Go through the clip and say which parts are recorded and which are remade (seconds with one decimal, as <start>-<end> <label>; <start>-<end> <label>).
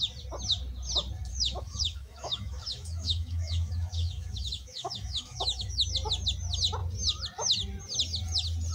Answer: 0.0-1.3 recorded; 1.3-5.8 remade; 5.8-8.7 recorded